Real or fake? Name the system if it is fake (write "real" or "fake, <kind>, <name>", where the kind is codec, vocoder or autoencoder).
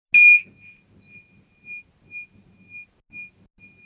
real